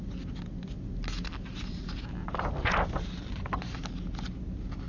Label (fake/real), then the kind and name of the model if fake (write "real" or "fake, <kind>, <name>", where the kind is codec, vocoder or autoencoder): real